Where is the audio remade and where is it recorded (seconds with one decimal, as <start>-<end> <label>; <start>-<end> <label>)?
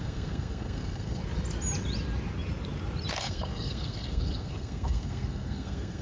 0.0-1.2 remade; 1.2-3.2 recorded; 3.2-6.0 remade